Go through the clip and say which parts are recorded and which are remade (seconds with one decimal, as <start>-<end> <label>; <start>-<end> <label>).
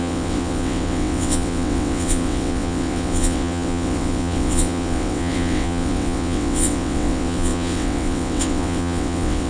0.0-9.5 remade